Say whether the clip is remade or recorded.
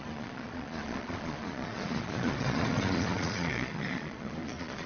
remade